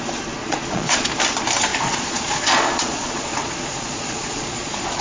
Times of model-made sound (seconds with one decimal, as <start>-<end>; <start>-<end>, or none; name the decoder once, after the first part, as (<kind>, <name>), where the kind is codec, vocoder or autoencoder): 0.4-1.1 (vocoder, Vocos); 1.7-5.0